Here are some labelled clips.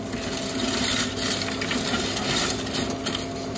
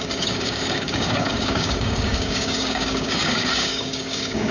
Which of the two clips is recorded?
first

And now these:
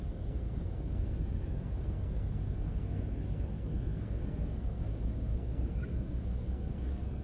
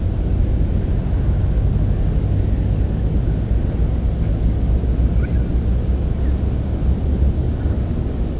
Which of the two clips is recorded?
second